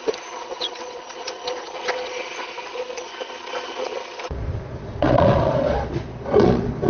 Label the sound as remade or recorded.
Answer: remade